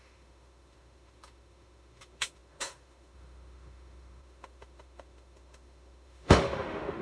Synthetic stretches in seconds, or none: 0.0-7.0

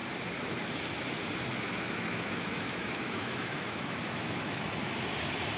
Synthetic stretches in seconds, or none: 1.5-4.7

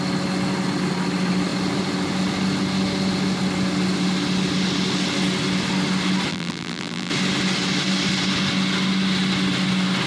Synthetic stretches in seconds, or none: 6.3-7.1

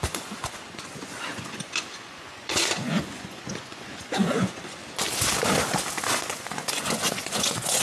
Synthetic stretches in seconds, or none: 0.0-4.8; 6.1-7.8

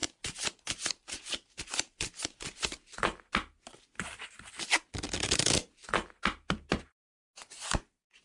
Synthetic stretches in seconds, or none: none

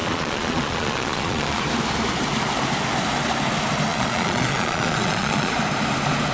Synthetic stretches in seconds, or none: 0.0-1.6; 3.9-5.5